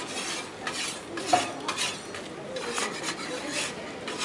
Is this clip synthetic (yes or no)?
no